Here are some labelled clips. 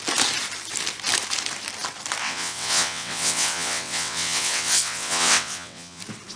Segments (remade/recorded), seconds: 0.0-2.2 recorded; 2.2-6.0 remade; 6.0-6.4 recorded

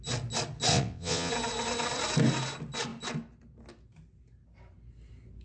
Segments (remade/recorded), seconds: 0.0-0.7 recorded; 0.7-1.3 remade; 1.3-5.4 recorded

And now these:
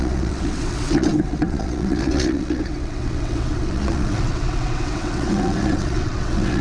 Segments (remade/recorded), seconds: 0.0-6.6 remade

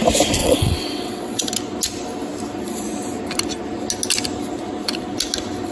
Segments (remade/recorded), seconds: 0.0-0.4 recorded; 0.4-1.5 remade; 1.5-5.7 recorded